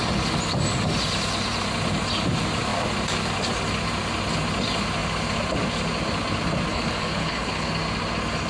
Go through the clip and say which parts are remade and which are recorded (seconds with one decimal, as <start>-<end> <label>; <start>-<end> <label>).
0.0-6.7 recorded; 6.7-7.7 remade; 7.7-8.5 recorded